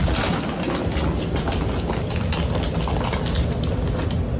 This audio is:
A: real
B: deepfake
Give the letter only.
A